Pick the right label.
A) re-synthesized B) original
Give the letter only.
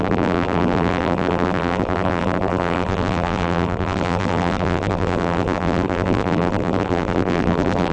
A